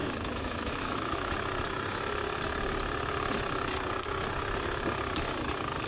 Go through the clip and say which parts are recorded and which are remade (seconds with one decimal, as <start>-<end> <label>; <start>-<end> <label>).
0.0-1.3 remade; 1.3-5.9 recorded